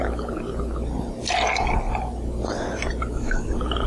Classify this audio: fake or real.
real